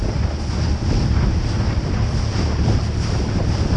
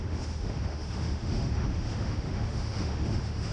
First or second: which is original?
first